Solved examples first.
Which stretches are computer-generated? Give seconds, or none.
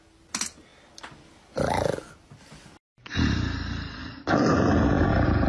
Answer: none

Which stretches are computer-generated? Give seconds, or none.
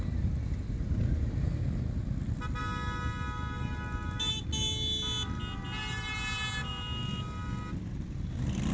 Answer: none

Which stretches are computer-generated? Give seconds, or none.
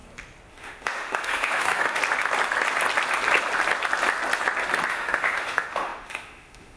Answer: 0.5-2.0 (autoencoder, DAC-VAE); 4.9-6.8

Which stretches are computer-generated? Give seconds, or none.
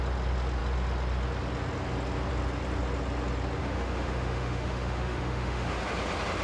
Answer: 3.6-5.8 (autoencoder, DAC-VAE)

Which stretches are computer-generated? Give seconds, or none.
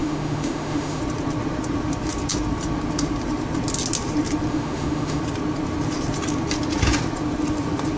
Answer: 0.0-1.0 (autoencoder, DAC-VAE); 4.5-5.2